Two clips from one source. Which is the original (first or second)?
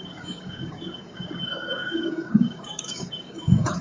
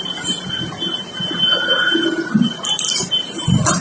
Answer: second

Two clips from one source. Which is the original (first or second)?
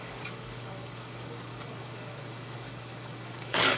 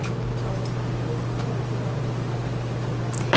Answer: second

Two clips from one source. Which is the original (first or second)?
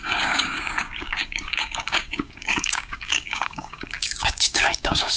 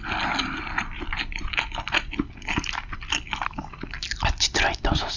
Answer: second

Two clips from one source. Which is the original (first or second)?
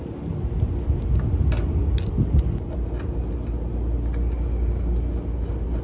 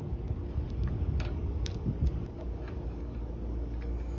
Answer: first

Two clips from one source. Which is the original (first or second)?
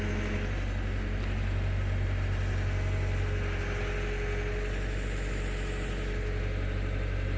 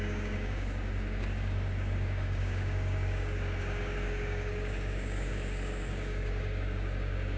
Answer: first